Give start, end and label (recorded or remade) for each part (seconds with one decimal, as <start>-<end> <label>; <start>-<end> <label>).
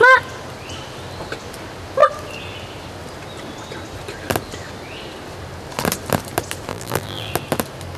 0.0-6.7 recorded; 6.7-7.3 remade; 7.3-8.0 recorded